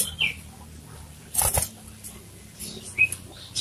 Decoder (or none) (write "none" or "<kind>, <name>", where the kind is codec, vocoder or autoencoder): none